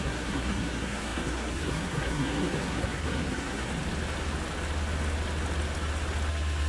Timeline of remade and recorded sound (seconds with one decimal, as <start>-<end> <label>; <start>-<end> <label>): 0.0-3.7 remade; 3.7-6.3 recorded; 6.3-6.7 remade